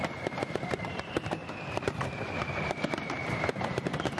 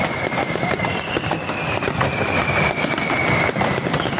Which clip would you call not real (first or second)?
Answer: first